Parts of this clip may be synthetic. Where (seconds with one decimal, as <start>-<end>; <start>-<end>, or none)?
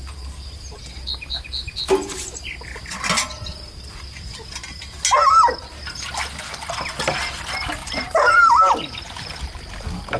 5.2-5.8; 7.8-9.6